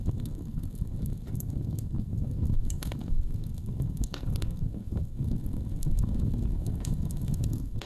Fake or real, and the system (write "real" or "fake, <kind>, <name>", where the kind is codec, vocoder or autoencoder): fake, codec, SNAC